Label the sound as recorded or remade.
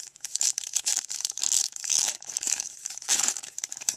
remade